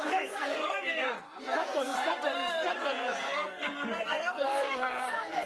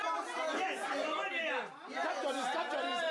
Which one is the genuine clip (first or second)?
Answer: second